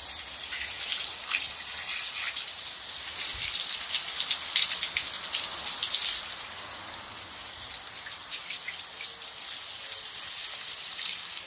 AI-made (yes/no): no